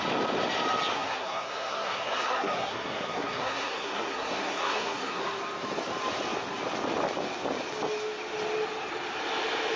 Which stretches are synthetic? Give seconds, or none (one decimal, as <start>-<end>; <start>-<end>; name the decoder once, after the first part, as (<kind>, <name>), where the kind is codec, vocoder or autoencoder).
0.9-5.2 (codec, SNAC)